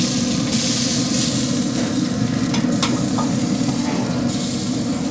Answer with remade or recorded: recorded